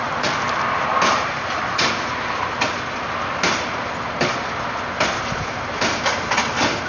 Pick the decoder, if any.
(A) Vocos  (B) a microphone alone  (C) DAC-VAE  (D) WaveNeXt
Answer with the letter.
B